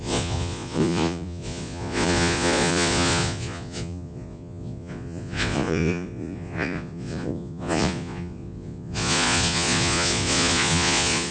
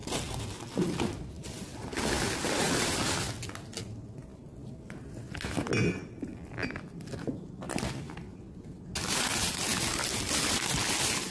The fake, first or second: first